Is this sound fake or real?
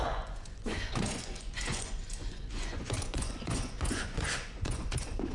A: fake